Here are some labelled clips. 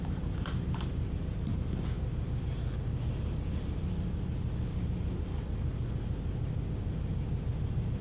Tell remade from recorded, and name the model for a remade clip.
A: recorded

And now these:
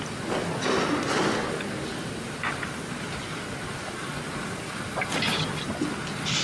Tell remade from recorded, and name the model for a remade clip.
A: recorded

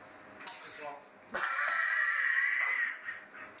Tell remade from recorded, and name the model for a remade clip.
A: recorded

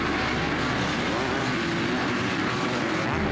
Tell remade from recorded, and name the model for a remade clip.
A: recorded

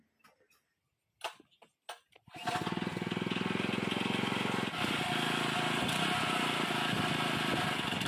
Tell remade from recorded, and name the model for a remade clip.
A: recorded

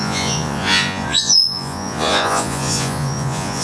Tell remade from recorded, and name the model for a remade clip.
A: remade, vocoder, Vocos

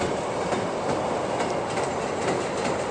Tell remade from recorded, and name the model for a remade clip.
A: recorded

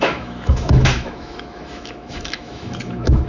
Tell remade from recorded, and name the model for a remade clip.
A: remade, autoencoder, DAC-VAE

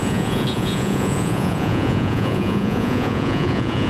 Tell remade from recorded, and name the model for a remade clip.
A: remade, vocoder, Vocos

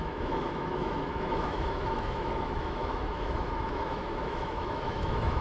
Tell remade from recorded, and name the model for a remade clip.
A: remade, autoencoder, DAC-VAE